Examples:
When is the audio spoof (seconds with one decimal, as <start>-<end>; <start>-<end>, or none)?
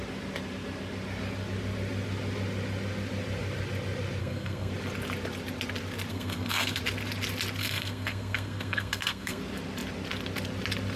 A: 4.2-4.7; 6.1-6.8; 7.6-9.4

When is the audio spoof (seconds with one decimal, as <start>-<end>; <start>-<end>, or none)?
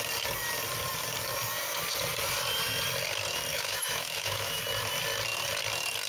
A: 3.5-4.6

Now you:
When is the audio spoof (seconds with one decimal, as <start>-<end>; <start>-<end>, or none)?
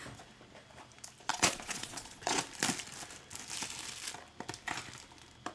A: 1.3-2.4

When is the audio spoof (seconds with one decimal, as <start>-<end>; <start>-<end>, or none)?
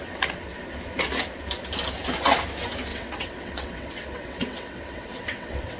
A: 2.9-5.8